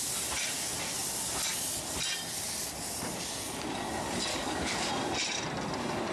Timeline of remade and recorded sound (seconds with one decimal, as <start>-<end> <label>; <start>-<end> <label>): 0.0-4.3 recorded; 4.3-4.9 remade; 4.9-6.1 recorded

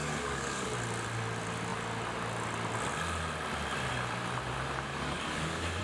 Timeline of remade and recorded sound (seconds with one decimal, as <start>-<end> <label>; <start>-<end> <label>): 0.0-0.7 remade; 0.7-4.9 recorded; 4.9-5.8 remade

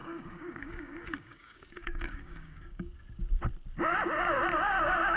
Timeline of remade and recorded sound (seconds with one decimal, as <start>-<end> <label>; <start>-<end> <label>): 0.0-2.9 remade; 2.9-4.8 recorded; 4.8-5.2 remade

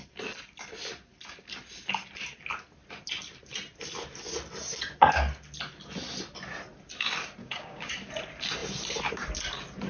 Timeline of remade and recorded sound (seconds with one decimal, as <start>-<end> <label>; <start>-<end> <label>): 0.0-7.4 recorded; 7.4-7.9 remade; 7.9-9.9 recorded